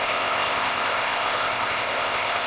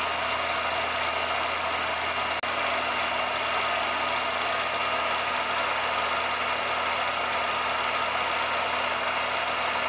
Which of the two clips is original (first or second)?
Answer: second